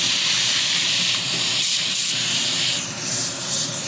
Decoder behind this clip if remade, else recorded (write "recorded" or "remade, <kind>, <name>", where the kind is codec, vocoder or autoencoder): remade, vocoder, BigVGAN v2